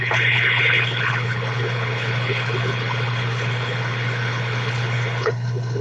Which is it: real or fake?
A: fake